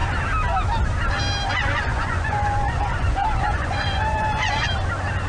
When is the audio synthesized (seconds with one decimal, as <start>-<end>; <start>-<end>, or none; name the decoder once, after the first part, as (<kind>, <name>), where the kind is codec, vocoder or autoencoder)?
1.5-4.7 (vocoder, Vocos)